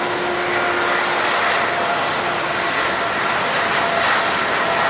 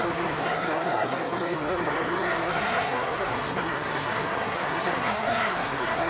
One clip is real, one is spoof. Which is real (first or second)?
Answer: first